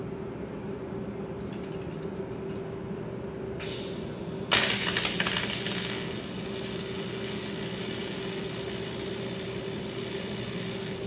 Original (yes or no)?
yes